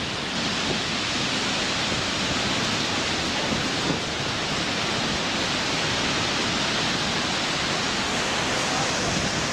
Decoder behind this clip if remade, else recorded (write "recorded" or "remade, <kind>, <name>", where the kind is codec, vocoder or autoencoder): recorded